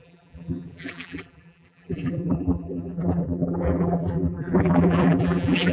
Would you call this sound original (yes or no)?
no